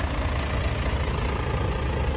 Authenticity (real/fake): real